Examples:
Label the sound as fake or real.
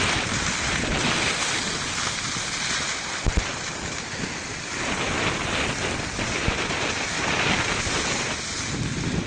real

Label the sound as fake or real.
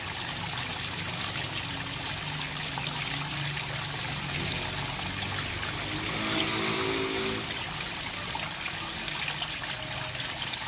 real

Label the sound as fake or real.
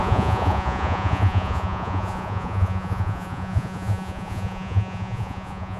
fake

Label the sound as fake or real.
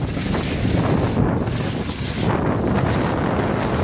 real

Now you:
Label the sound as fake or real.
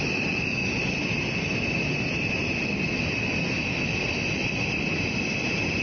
real